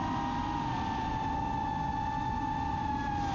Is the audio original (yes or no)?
yes